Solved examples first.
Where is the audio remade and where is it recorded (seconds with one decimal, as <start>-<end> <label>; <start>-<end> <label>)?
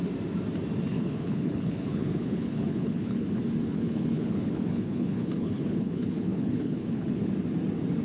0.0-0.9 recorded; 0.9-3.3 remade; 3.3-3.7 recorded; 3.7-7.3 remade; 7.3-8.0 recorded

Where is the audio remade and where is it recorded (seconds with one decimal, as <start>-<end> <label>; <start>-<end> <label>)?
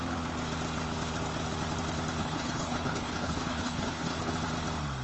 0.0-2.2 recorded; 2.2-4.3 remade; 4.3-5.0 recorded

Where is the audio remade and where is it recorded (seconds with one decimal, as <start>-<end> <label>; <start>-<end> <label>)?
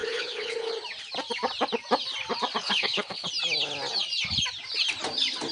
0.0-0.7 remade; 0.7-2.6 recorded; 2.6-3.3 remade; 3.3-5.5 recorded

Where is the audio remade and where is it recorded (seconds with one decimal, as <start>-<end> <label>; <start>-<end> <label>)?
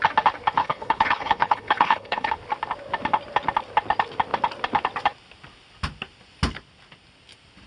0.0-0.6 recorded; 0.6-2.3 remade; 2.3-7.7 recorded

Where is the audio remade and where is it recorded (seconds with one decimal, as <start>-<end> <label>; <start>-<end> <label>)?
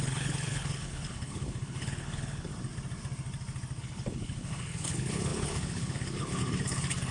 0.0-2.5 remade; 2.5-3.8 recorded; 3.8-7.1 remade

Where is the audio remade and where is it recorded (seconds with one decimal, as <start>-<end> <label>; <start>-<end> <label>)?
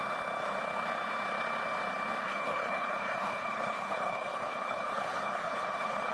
0.0-2.2 recorded; 2.2-6.1 remade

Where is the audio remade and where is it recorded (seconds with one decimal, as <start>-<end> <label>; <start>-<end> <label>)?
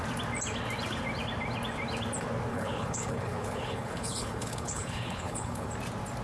0.0-2.5 recorded; 2.5-5.7 remade; 5.7-6.2 recorded